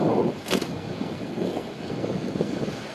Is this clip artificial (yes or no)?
yes